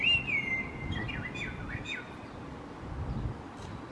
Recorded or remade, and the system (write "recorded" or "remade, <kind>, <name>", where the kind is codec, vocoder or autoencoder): recorded